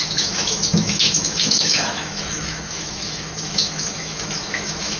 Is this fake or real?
fake